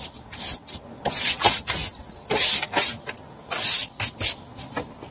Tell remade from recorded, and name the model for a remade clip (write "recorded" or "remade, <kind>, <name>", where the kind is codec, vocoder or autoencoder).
recorded